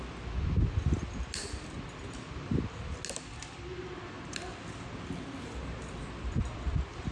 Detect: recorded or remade recorded